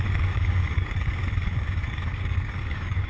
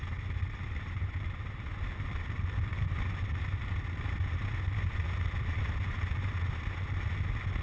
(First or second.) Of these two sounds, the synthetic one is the first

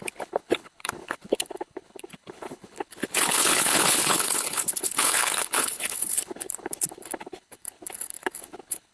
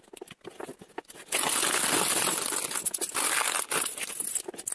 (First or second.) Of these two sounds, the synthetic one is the first